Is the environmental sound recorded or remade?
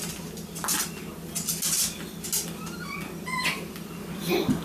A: recorded